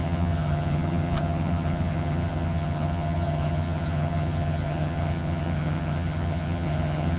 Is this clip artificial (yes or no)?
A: yes